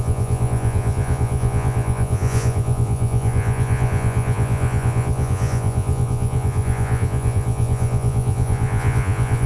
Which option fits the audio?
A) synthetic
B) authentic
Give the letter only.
A